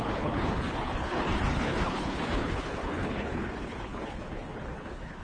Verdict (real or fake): fake